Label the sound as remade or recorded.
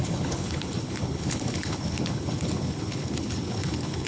remade